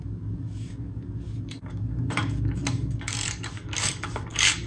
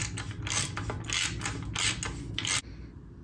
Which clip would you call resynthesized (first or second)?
first